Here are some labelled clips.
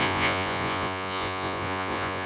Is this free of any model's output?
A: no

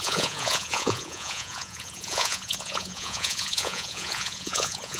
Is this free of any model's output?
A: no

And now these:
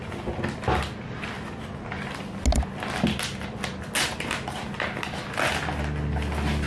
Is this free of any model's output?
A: yes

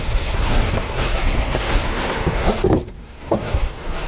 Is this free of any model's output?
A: no